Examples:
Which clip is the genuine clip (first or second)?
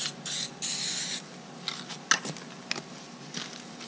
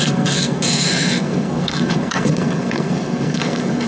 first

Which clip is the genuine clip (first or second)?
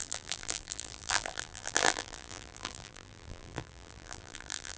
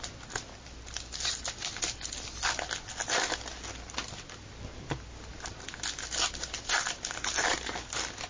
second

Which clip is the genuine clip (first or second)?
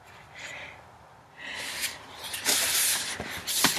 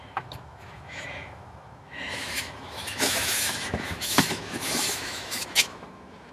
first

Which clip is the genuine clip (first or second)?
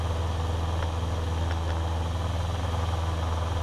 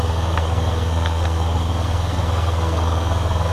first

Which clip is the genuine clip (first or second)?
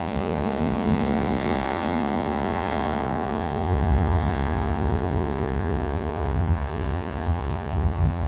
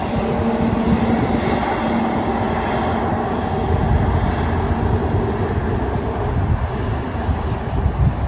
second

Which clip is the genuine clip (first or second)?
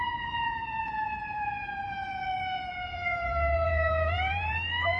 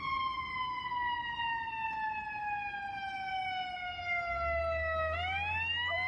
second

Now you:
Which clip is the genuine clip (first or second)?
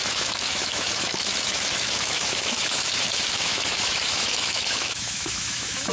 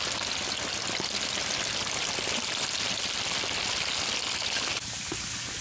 second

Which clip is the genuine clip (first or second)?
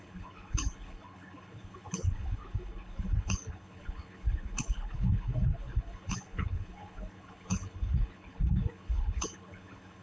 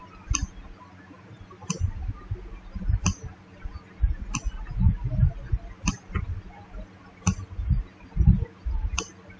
second